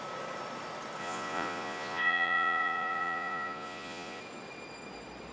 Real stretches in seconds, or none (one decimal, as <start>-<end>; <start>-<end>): 0.0-1.0; 4.2-5.3